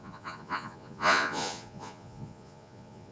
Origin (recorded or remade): remade